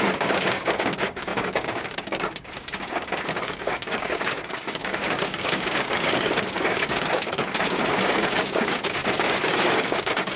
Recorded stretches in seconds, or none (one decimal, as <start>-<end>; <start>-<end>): none